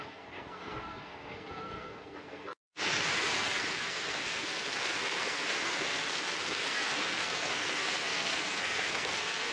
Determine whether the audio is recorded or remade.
remade